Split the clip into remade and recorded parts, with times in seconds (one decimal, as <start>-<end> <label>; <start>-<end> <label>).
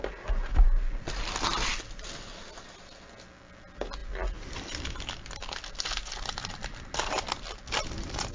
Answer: 0.0-8.3 recorded